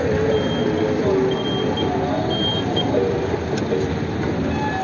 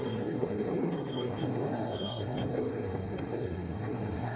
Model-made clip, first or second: second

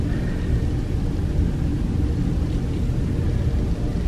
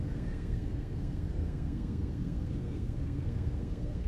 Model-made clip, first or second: second